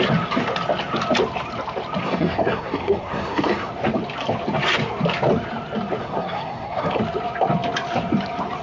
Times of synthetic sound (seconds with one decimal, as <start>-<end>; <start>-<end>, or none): 2.0-3.7; 6.0-7.0